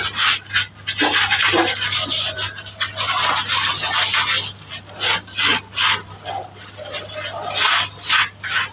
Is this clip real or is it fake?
real